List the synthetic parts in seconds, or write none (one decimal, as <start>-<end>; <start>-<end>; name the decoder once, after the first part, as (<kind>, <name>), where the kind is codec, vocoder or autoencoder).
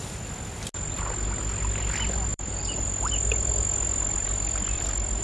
2.3-5.2 (vocoder, BigVGAN v2)